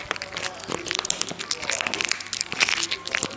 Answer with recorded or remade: recorded